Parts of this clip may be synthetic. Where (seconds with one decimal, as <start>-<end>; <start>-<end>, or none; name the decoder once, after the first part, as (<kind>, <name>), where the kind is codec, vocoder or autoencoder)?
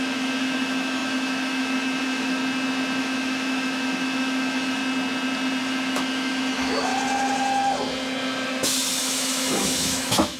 0.0-2.4 (autoencoder, DAC-VAE); 3.0-4.8; 5.6-6.9; 9.0-10.4